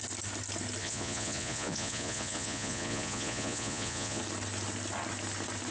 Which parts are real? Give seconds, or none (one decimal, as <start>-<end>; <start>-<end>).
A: 0.0-0.8; 4.2-5.7